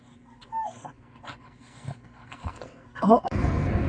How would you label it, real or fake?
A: fake